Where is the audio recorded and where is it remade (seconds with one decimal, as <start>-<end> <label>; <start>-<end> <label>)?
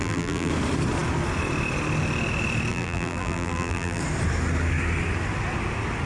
0.0-0.5 remade; 0.5-2.7 recorded; 2.7-4.0 remade; 4.0-6.1 recorded